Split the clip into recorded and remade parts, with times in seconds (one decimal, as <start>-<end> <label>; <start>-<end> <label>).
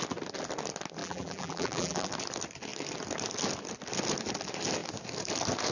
0.0-1.0 recorded; 1.0-2.1 remade; 2.1-5.7 recorded